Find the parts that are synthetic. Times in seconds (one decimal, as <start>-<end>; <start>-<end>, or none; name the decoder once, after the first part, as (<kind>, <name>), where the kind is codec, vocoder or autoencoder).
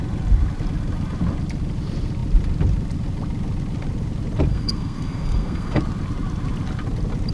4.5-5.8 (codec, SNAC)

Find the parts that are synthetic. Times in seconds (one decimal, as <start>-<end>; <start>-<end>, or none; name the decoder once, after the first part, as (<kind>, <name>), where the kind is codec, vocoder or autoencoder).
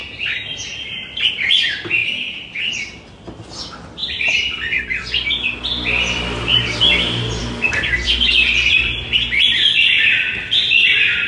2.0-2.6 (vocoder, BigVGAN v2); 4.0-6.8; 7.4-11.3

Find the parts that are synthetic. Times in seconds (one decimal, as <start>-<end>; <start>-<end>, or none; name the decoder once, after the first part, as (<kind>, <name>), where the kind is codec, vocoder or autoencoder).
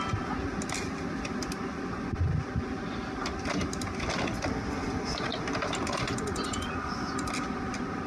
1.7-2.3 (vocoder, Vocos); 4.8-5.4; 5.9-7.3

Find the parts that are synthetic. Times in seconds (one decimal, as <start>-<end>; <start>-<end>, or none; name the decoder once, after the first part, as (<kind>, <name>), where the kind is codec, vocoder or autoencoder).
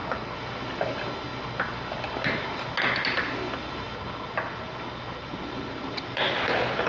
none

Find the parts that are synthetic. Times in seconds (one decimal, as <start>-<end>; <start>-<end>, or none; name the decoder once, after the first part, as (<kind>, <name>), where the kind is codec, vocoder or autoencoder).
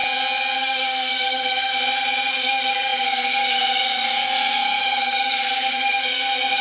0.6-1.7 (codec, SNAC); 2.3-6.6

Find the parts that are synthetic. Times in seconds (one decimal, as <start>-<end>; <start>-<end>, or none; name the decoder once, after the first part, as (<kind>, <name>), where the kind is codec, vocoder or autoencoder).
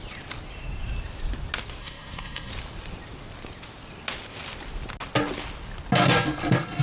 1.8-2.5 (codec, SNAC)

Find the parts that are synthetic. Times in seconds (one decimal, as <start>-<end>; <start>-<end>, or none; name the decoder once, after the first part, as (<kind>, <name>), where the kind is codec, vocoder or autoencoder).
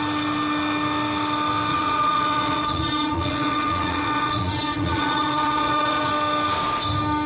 1.7-6.1 (vocoder, Vocos)